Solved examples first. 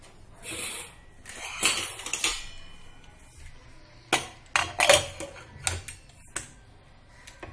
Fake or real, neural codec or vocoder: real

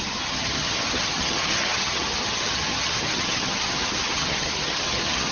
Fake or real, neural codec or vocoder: fake, vocoder, HiFi-GAN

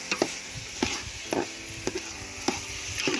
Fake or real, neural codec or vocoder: real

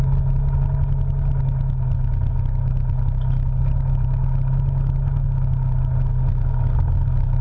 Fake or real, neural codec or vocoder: real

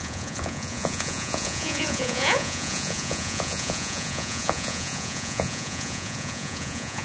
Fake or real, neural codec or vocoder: fake, vocoder, Vocos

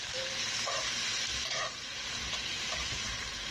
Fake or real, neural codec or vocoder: fake, vocoder, BigVGAN v2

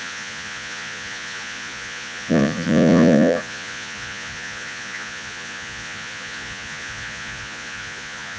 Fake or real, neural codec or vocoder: fake, vocoder, Vocos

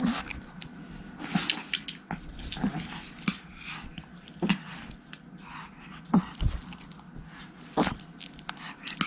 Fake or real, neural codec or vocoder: real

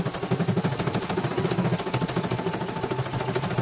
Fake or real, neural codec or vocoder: real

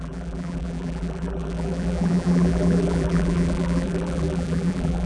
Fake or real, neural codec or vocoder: fake, vocoder, BigVGAN v2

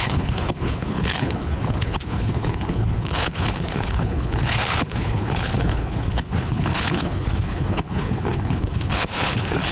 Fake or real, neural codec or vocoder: fake, codec, HILCodec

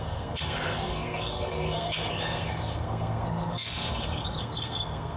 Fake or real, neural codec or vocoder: fake, codec, SNAC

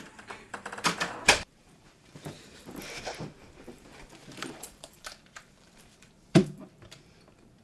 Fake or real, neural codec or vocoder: fake, vocoder, BigVGAN v2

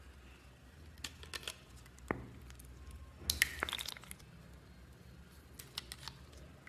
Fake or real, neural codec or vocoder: real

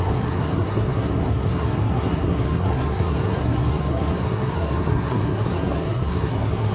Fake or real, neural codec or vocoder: fake, codec, SNAC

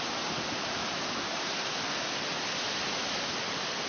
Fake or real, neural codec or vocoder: real